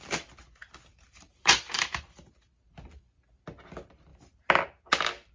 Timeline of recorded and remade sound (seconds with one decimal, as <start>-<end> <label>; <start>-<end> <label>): 0.0-0.9 recorded; 0.9-2.0 remade; 2.0-5.3 recorded